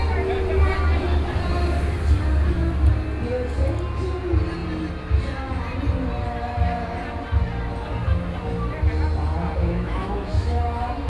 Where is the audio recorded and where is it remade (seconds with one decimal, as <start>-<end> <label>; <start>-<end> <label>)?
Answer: 0.0-9.6 recorded; 9.6-10.6 remade; 10.6-11.1 recorded